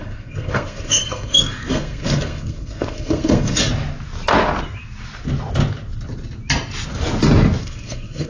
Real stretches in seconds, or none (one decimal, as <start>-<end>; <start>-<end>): 3.6-7.6